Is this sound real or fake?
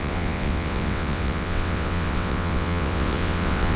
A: fake